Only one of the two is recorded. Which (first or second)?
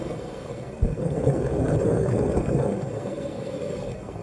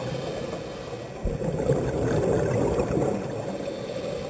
second